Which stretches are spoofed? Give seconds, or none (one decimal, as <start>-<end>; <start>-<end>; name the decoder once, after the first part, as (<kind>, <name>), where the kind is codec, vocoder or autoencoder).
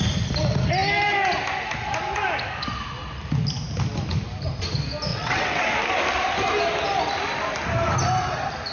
5.1-5.7 (vocoder, WaveNeXt)